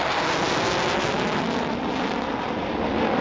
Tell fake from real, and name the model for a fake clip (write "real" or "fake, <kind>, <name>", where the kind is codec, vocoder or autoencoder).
real